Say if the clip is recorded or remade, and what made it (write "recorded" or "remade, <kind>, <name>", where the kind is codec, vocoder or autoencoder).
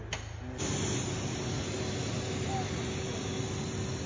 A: recorded